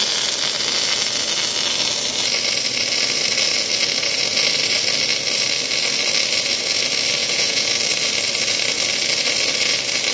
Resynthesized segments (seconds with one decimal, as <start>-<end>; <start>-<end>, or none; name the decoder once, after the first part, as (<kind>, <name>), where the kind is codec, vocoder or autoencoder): 7.2-7.7 (vocoder, Vocos)